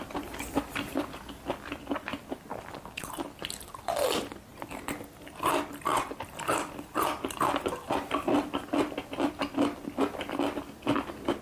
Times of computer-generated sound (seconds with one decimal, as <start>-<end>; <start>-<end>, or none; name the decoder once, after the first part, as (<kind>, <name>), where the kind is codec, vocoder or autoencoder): none